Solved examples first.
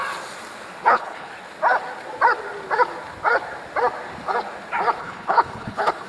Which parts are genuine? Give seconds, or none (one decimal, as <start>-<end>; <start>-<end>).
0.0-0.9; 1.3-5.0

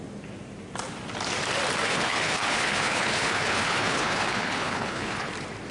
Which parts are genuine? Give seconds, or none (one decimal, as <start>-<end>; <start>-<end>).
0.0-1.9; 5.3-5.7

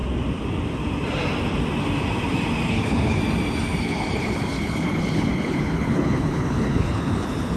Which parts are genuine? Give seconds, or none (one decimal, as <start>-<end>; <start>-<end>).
0.0-2.7; 3.2-3.8

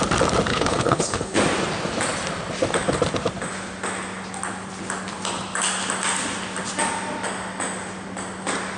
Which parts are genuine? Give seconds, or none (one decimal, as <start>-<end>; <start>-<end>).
0.0-0.5; 1.4-8.8